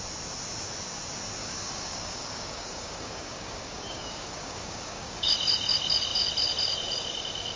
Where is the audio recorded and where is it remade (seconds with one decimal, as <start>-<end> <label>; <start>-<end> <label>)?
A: 0.0-1.4 recorded; 1.4-5.3 remade; 5.3-7.6 recorded